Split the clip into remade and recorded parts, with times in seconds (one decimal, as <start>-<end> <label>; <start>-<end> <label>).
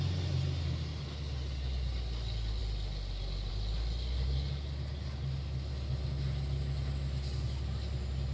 0.0-8.3 recorded